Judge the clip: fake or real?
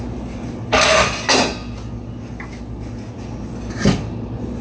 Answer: real